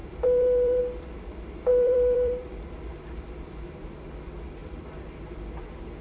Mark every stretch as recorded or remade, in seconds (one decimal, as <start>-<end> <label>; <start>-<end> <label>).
0.0-0.8 remade; 0.8-1.7 recorded; 1.7-2.5 remade; 2.5-2.9 recorded; 2.9-3.7 remade; 3.7-4.6 recorded; 4.6-5.4 remade; 5.4-6.0 recorded